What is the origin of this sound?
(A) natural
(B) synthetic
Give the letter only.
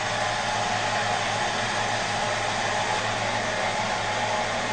A